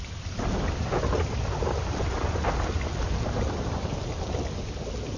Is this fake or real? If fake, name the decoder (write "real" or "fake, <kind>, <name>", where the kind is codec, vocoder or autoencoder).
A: real